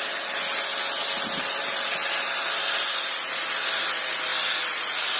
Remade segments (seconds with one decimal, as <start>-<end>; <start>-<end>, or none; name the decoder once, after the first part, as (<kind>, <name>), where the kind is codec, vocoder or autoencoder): none